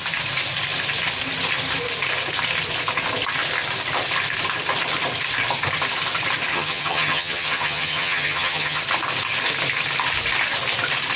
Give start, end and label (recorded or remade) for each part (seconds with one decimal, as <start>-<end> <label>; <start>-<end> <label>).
0.0-6.5 recorded; 6.5-8.8 remade; 8.8-11.2 recorded